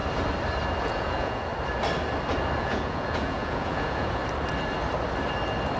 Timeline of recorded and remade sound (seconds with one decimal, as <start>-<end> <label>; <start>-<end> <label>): 0.0-0.8 recorded; 0.8-1.5 remade; 1.5-2.6 recorded; 2.6-4.2 remade; 4.2-5.8 recorded